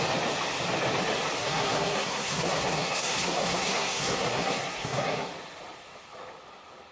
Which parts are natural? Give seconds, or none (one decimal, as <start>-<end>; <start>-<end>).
0.0-1.4; 5.3-6.9